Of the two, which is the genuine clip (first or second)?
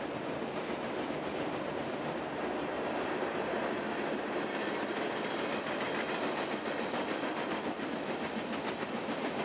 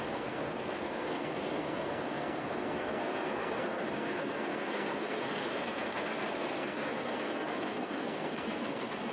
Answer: first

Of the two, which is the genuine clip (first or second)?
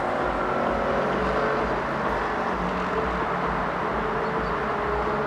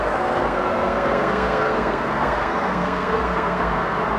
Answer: first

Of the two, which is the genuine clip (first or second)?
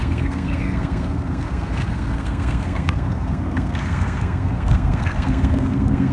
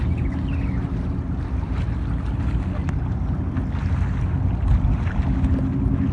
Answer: second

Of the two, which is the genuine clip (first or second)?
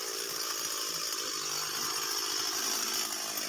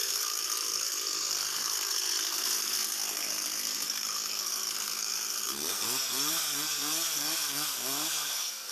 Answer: first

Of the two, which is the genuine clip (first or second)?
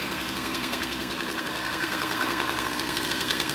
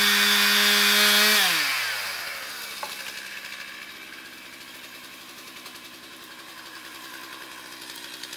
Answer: second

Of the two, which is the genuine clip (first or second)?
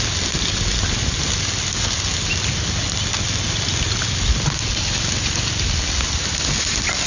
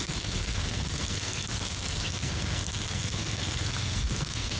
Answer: first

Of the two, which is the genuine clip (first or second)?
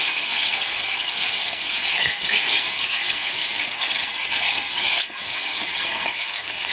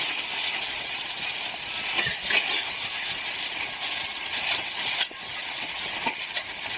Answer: second